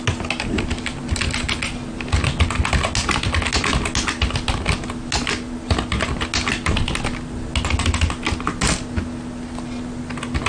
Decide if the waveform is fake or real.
real